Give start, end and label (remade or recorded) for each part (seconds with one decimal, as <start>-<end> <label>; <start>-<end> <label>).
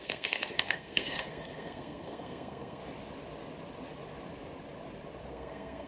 0.0-2.8 remade; 2.8-5.3 recorded; 5.3-5.9 remade